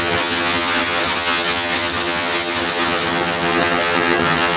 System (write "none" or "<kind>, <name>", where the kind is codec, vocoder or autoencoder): vocoder, HiFi-GAN